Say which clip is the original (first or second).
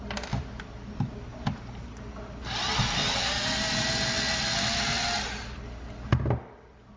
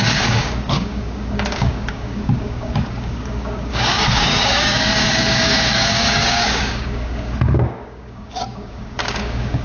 first